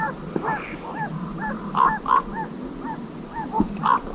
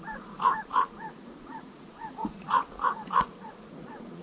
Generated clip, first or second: second